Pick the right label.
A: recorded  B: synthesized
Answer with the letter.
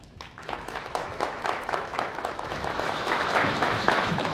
B